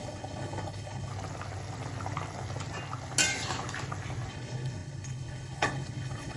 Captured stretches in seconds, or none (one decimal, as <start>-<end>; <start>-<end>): 1.1-4.3